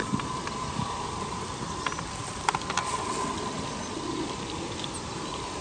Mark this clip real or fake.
real